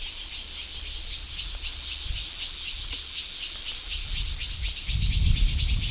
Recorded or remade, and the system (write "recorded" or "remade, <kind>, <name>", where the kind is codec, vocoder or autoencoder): recorded